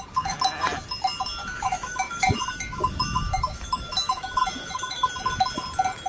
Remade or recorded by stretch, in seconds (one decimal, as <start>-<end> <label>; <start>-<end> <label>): 0.0-1.4 recorded; 1.4-5.1 remade; 5.1-6.1 recorded